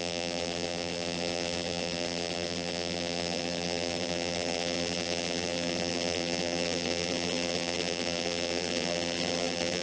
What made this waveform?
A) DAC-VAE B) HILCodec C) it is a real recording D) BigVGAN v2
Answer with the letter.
D